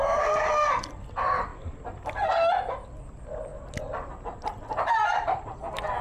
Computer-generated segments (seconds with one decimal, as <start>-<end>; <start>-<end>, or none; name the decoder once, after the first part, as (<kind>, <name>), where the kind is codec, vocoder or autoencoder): 5.0-5.6 (vocoder, BigVGAN v2)